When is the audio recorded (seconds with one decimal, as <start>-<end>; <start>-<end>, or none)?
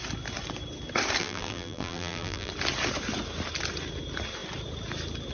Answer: 0.0-1.2; 2.5-5.3